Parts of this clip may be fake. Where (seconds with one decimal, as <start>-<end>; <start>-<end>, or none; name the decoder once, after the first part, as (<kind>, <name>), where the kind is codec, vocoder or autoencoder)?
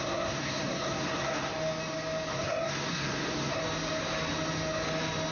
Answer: 0.0-1.5 (codec, SNAC); 2.3-3.6